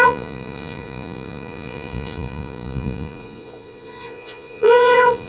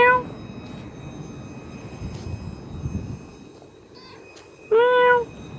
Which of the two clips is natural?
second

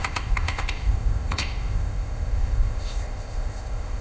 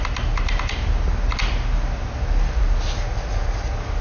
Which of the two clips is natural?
second